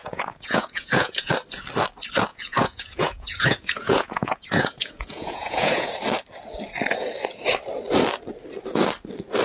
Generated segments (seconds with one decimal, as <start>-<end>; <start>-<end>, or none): 0.0-1.3; 2.3-6.0

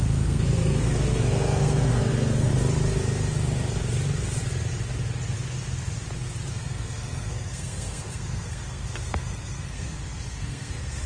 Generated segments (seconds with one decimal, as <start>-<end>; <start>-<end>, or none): 0.0-2.5; 6.5-11.1

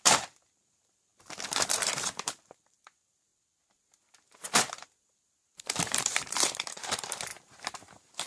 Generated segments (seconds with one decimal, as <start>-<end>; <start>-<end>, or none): 0.0-3.3; 4.7-8.3

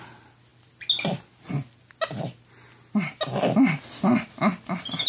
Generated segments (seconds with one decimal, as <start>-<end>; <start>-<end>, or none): none